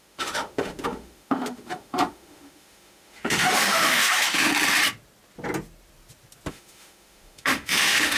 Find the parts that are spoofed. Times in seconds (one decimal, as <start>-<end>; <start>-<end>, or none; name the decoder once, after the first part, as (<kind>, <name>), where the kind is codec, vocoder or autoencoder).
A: 0.0-4.5 (autoencoder, DAC-VAE); 6.5-8.2